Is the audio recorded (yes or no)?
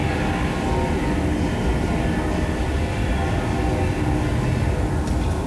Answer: yes